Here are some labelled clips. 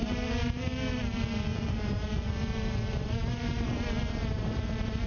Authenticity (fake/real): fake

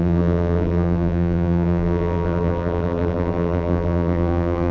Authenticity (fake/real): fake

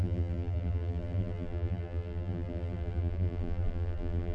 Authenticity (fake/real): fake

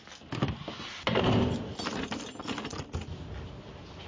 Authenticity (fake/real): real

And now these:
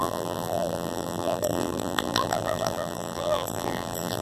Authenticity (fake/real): fake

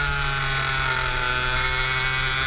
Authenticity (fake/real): real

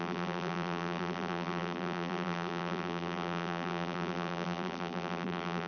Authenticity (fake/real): fake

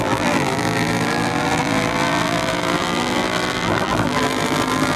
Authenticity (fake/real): fake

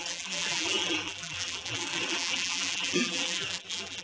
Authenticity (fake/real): fake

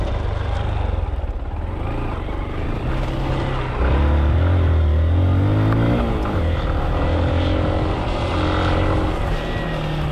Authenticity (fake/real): real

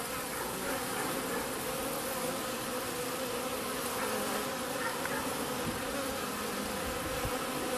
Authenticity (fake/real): real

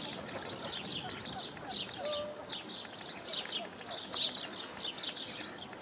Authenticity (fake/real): real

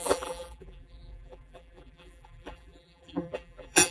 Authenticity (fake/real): fake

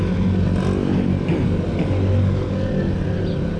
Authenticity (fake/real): real